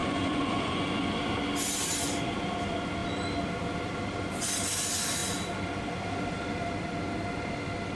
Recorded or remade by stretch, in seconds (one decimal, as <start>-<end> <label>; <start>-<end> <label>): 0.0-1.2 remade; 1.2-8.0 recorded